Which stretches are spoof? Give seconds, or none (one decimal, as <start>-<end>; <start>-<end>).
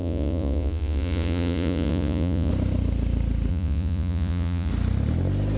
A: 0.0-2.5; 3.5-4.7